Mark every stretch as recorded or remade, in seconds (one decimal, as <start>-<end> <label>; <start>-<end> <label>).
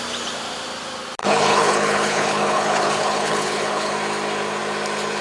0.0-1.2 recorded; 1.2-3.9 remade; 3.9-5.2 recorded